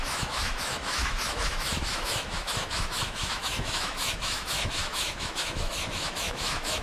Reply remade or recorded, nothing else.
remade